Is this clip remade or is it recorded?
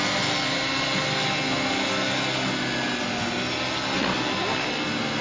recorded